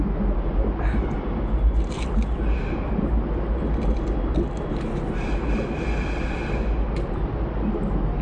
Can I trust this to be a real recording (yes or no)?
yes